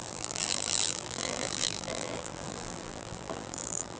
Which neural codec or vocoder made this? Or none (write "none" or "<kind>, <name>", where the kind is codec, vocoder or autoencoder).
vocoder, BigVGAN v2